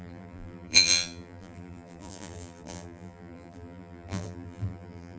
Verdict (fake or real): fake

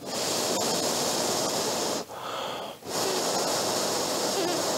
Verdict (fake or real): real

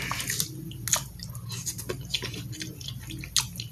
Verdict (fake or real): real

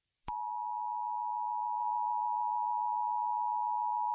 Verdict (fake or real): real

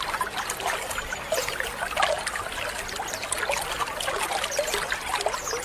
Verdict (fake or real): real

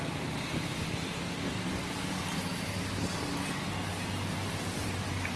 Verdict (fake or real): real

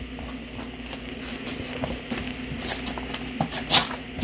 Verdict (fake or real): real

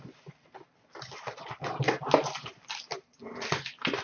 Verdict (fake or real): real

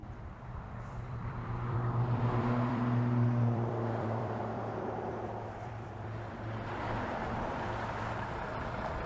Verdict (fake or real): fake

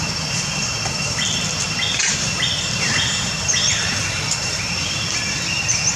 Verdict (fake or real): fake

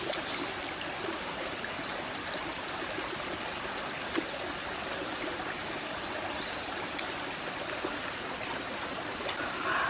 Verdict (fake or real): real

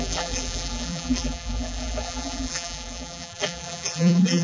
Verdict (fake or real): fake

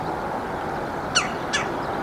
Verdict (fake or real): real